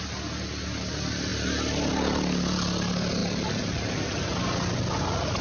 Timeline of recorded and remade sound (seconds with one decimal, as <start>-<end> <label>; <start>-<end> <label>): 0.0-5.4 recorded